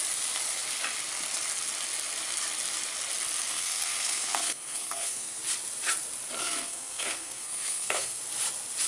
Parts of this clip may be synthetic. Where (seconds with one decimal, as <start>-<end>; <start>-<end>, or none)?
3.5-5.4; 6.4-8.2